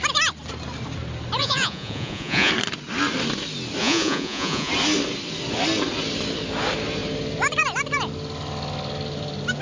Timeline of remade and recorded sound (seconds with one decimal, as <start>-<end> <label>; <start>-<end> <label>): 0.0-1.4 recorded; 1.4-2.5 remade; 2.5-3.8 recorded; 3.8-4.7 remade; 4.7-9.6 recorded